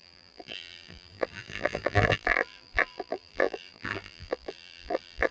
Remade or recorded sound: remade